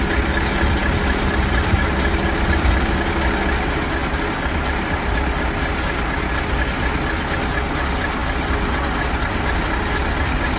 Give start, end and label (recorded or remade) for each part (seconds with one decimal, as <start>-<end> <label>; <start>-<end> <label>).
0.0-10.6 recorded